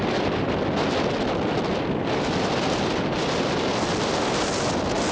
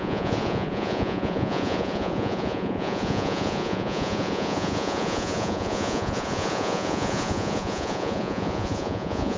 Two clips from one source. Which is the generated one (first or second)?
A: second